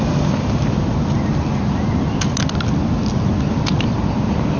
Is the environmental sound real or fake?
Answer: real